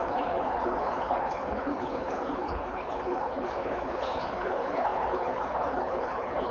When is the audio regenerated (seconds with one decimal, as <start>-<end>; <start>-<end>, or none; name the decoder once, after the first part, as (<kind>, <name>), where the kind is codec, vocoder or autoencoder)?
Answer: 0.0-6.5 (codec, HILCodec)